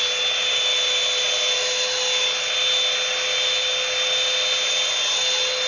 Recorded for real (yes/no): yes